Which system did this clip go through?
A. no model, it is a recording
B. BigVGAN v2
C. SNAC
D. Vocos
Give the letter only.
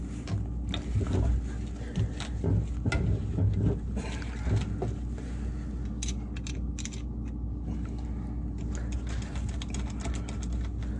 A